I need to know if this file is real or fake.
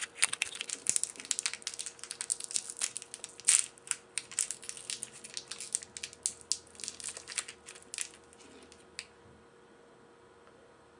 real